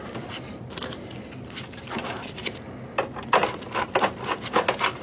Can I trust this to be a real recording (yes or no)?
yes